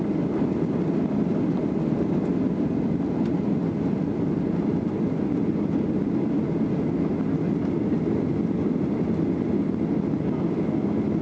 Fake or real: real